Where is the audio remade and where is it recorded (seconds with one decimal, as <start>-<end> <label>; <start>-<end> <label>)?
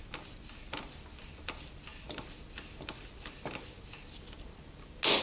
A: 0.0-5.2 recorded